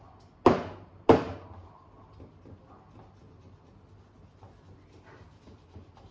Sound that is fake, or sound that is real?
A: real